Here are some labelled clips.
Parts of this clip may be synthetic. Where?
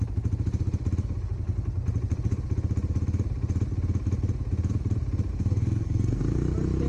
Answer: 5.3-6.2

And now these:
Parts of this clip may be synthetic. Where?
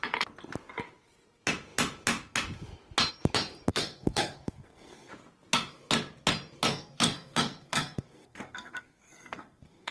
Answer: 3.7-5.1; 6.7-9.9